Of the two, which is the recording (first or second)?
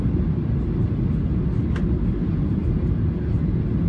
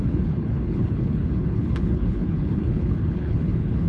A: first